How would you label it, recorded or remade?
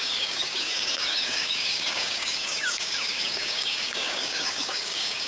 remade